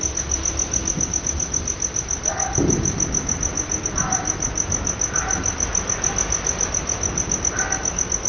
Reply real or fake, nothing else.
real